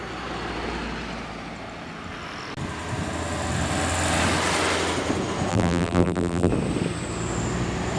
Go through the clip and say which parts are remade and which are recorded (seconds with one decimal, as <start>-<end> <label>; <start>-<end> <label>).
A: 0.0-5.5 recorded; 5.5-6.5 remade; 6.5-8.0 recorded

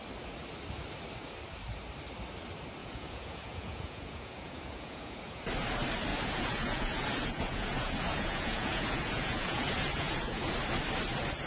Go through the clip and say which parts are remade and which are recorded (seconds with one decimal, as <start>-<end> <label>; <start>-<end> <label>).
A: 0.0-2.8 recorded; 2.8-5.4 remade; 5.4-6.1 recorded; 6.1-10.5 remade; 10.5-11.5 recorded